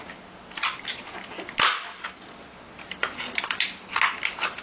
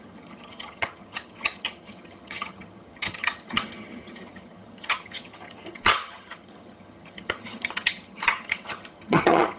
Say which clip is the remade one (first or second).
second